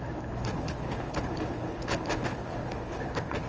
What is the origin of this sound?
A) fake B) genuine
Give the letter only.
A